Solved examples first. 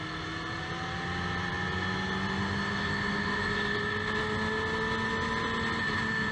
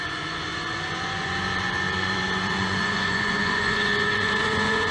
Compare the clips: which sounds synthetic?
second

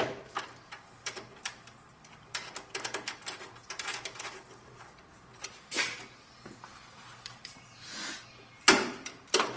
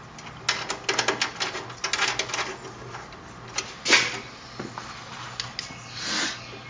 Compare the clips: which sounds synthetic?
first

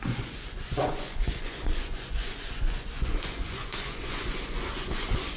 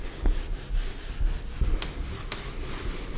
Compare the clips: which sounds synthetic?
first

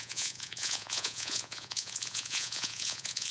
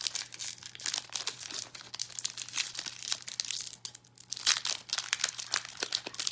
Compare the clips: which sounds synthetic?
first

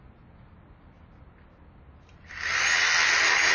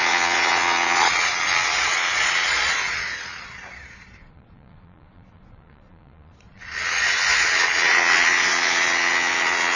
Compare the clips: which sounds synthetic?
second